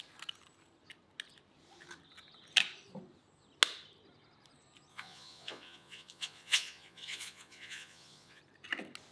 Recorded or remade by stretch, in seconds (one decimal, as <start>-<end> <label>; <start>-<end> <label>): 0.0-4.9 recorded; 4.9-8.4 remade; 8.4-9.1 recorded